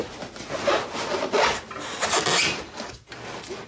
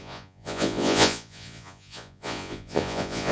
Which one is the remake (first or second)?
second